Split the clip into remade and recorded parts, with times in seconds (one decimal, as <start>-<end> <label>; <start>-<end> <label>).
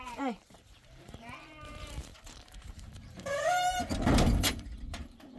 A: 0.0-5.4 remade